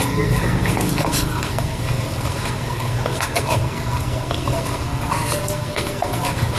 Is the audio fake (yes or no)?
yes